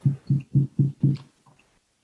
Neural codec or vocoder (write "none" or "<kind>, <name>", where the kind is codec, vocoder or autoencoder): none